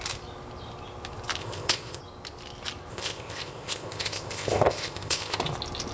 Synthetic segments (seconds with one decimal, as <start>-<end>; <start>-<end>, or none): 1.4-2.0; 2.9-5.4